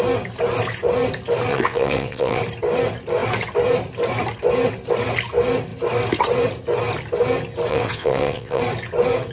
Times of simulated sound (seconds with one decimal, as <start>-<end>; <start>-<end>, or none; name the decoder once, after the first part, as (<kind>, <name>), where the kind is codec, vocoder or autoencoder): 1.5-2.4 (vocoder, WaveNeXt); 7.7-8.6